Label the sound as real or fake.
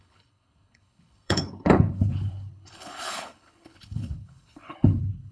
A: fake